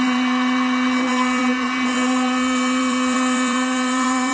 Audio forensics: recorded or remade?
remade